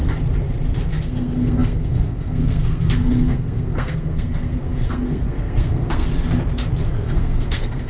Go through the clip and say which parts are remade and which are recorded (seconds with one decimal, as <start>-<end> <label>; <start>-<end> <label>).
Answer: 0.0-0.9 recorded; 0.9-6.1 remade; 6.1-7.0 recorded; 7.0-7.9 remade